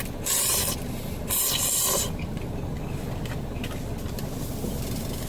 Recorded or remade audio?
recorded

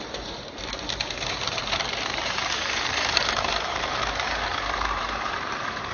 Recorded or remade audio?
remade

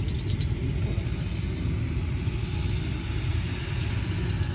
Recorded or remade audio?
recorded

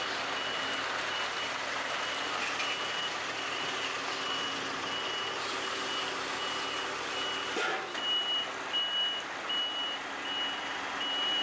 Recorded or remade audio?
recorded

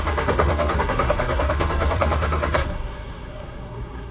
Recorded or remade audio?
remade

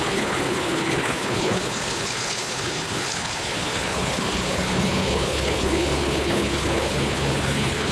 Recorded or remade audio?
remade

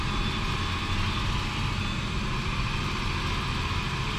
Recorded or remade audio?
recorded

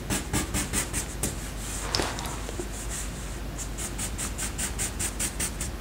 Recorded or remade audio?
recorded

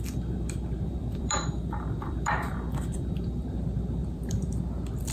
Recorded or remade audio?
remade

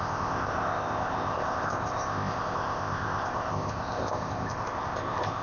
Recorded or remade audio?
remade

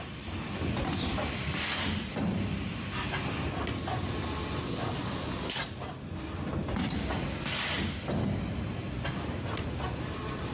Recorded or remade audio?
recorded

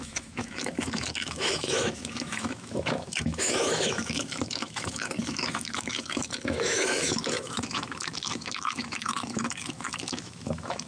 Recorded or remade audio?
remade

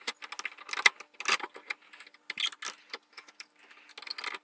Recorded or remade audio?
recorded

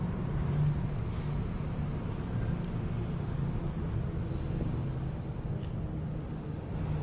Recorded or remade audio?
recorded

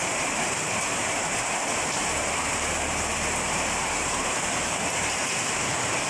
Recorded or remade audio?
remade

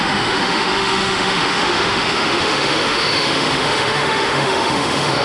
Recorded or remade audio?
remade